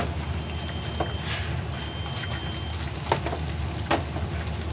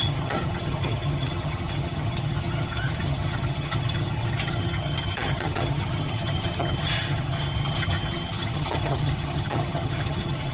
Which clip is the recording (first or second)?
first